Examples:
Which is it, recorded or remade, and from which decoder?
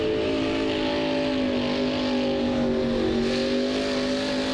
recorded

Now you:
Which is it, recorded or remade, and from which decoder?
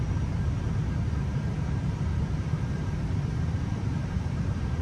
remade, vocoder, BigVGAN v2